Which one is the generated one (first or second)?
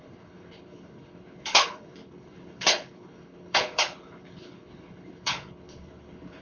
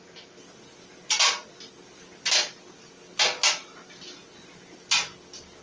first